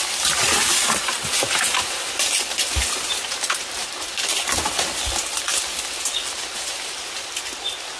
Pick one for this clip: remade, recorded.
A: recorded